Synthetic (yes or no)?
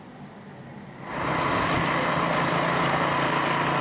no